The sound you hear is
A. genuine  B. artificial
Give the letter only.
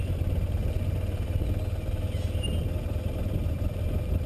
A